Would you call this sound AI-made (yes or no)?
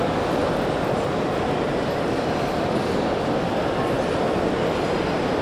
no